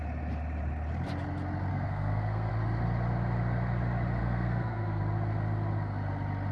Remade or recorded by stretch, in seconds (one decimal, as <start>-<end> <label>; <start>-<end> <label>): 0.0-1.7 recorded; 1.7-2.5 remade; 2.5-4.2 recorded; 4.2-5.0 remade; 5.0-6.5 recorded